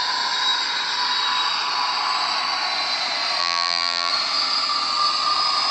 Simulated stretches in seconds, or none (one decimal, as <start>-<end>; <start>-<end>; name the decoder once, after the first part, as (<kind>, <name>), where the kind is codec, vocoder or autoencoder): 3.4-4.1 (vocoder, BigVGAN v2)